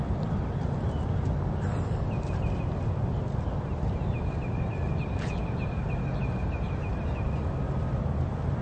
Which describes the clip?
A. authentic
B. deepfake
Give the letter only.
A